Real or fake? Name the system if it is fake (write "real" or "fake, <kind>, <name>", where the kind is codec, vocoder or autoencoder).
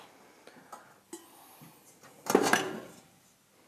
real